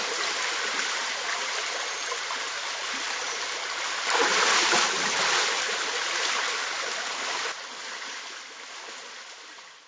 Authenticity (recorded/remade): recorded